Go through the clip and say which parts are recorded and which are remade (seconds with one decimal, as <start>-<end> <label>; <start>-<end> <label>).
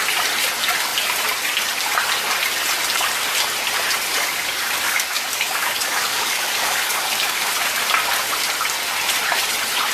0.0-4.3 recorded; 4.3-7.5 remade; 7.5-9.9 recorded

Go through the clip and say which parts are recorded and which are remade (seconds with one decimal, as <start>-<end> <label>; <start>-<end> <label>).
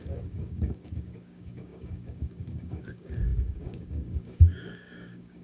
0.0-5.4 remade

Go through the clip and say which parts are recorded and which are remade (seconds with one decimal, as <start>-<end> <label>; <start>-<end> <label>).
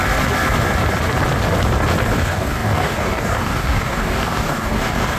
0.0-2.1 recorded; 2.1-5.2 remade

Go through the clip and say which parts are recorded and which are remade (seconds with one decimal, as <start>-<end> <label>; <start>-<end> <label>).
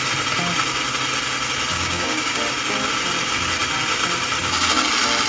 0.0-1.7 recorded; 1.7-2.4 remade; 2.4-5.3 recorded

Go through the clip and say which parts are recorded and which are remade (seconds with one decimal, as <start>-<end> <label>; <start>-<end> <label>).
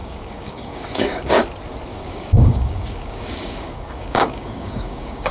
0.0-1.4 remade; 1.4-1.9 recorded; 1.9-5.3 remade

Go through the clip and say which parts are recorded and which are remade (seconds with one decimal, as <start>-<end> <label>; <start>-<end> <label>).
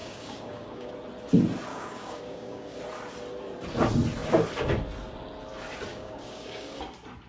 0.0-0.9 remade; 0.9-1.7 recorded; 1.7-2.8 remade; 2.8-5.9 recorded; 5.9-6.8 remade; 6.8-7.3 recorded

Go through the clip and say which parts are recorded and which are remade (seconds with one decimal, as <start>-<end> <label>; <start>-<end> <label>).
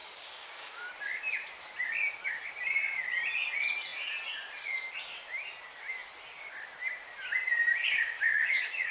0.0-0.9 remade; 0.9-8.3 recorded; 8.3-8.9 remade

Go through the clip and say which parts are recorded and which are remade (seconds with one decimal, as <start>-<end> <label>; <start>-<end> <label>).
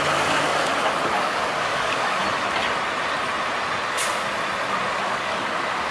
0.0-0.5 remade; 0.5-1.1 recorded; 1.1-2.2 remade; 2.2-5.0 recorded; 5.0-5.9 remade